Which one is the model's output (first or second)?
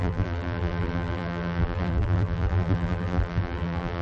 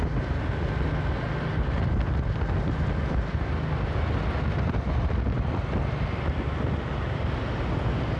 first